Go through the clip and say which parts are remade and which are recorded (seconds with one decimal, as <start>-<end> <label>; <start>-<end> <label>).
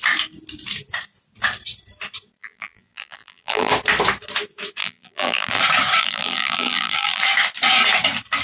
0.0-2.4 recorded; 2.4-3.7 remade; 3.7-4.8 recorded; 4.8-5.6 remade; 5.6-6.0 recorded; 6.0-7.2 remade; 7.2-8.4 recorded